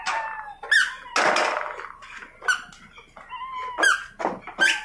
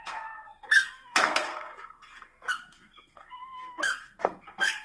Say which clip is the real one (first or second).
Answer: first